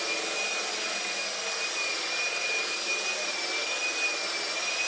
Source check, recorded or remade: recorded